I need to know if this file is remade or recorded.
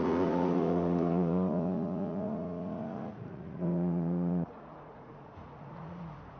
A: remade